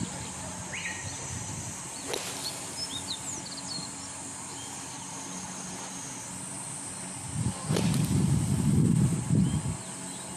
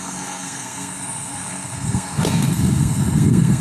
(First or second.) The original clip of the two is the first